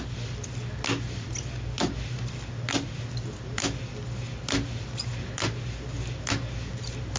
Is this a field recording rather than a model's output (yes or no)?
yes